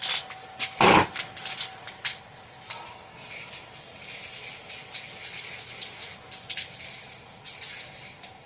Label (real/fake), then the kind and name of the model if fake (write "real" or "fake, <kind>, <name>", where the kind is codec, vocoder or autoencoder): fake, vocoder, BigVGAN v2